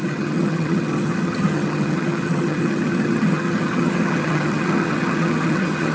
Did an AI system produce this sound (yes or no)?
yes